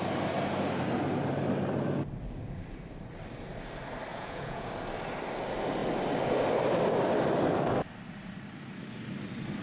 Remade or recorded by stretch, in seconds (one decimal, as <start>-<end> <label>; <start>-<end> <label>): 0.0-4.1 recorded; 4.1-4.7 remade; 4.7-9.6 recorded